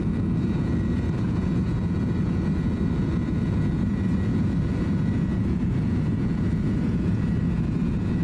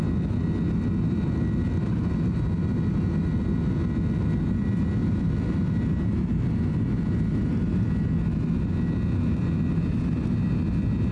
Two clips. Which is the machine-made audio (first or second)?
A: first